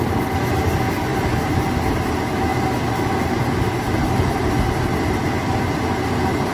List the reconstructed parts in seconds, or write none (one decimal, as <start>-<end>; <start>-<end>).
none